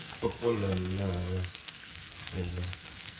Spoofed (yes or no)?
yes